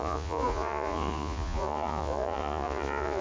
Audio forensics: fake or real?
fake